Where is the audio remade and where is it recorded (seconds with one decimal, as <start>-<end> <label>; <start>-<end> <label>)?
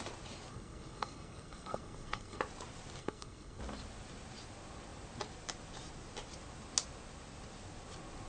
0.0-0.5 recorded; 0.5-2.4 remade; 2.4-3.0 recorded; 3.0-3.6 remade; 3.6-8.3 recorded